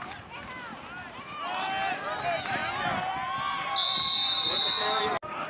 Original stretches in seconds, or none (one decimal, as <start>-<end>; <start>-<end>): 0.0-5.5